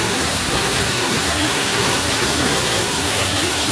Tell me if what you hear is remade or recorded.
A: remade